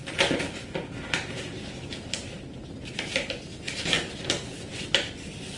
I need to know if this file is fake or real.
real